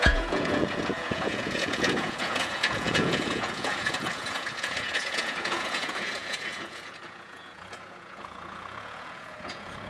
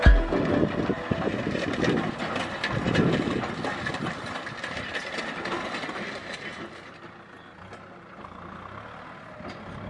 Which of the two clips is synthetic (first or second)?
first